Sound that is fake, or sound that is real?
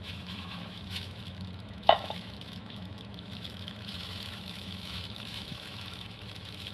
fake